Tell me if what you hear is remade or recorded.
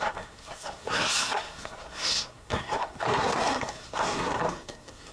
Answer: remade